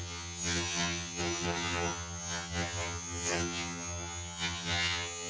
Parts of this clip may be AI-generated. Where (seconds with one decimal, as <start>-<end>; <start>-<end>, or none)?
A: 0.0-5.3